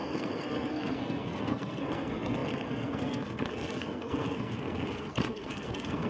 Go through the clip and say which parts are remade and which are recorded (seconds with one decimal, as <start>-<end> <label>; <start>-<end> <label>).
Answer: 0.0-6.1 remade